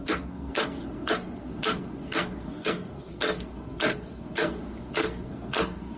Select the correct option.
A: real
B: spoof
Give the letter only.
B